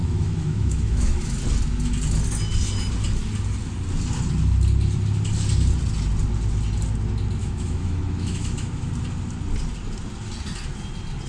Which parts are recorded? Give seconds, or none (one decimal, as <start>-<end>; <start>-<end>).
1.4-7.4; 8.9-11.3